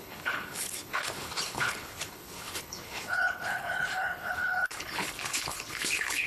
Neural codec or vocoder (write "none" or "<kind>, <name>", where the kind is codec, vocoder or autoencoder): codec, HILCodec